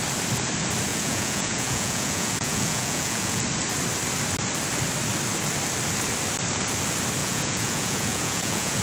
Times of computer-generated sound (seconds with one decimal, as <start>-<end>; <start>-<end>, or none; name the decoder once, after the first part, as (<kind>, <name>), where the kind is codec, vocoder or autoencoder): 0.9-3.4 (vocoder, Vocos); 7.2-8.8